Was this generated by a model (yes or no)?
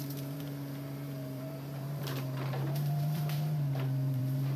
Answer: yes